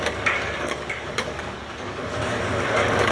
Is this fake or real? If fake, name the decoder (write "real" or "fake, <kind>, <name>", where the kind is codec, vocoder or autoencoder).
fake, codec, DAC